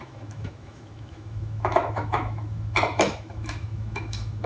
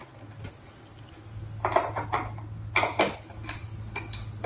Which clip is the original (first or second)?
second